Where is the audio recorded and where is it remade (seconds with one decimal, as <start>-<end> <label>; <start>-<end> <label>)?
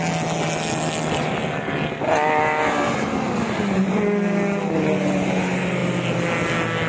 0.0-6.9 recorded